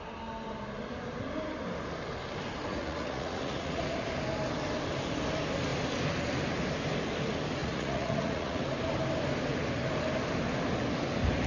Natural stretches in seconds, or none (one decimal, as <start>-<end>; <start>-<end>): 0.0-2.7; 3.8-7.6; 8.6-11.5